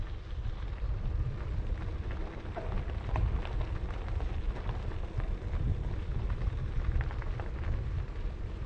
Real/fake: real